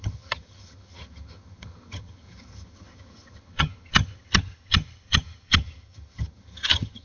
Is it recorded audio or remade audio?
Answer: remade